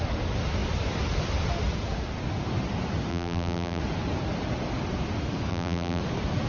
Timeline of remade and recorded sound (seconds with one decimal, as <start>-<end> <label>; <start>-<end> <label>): 0.0-3.1 recorded; 3.1-3.8 remade; 3.8-5.5 recorded; 5.5-6.0 remade; 6.0-6.5 recorded